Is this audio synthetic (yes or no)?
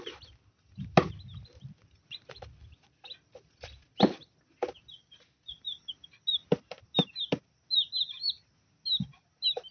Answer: no